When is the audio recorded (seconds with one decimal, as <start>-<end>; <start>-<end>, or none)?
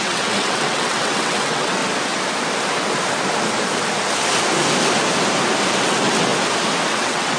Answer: 1.8-5.8; 6.3-6.9